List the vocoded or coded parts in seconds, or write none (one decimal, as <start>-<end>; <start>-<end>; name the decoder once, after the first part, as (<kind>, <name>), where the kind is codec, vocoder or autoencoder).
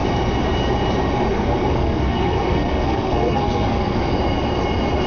1.3-4.0 (codec, SNAC)